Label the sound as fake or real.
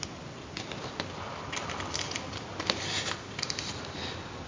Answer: real